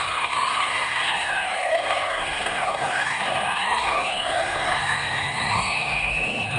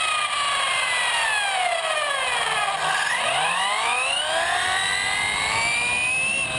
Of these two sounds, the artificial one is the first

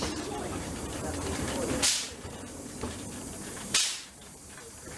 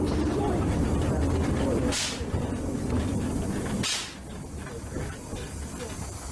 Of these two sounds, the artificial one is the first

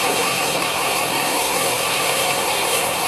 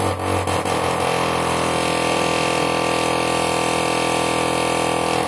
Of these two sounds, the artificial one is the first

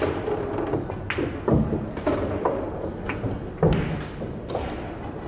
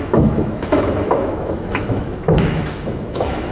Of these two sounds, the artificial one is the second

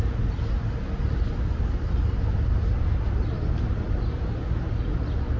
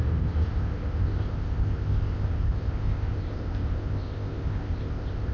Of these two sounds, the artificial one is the second